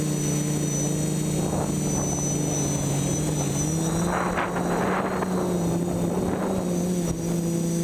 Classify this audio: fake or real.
real